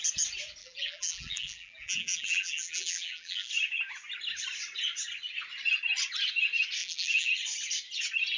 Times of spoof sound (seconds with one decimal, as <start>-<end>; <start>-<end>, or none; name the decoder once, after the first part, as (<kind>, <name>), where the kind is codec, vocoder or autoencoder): 0.6-3.5 (vocoder, BigVGAN v2); 6.8-7.3